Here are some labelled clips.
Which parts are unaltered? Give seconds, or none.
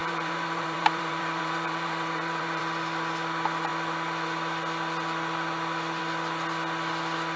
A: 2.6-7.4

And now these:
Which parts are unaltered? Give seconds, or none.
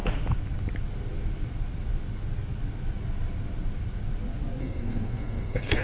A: 0.0-4.6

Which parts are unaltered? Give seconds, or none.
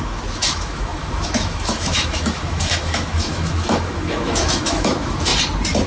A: 5.3-5.9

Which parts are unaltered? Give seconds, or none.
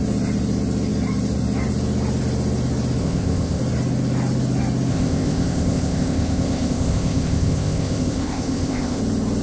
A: 0.0-3.0; 3.6-4.9; 9.0-9.4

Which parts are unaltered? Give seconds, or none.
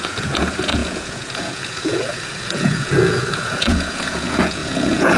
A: none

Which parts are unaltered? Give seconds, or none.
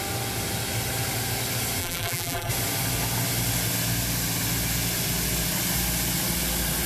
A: 0.0-1.8; 2.5-6.9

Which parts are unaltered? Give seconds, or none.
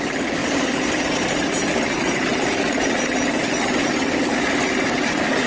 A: 0.0-0.4; 0.9-2.3; 2.9-5.5